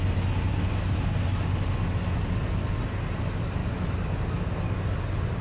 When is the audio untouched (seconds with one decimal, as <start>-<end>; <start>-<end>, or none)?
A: 0.0-5.4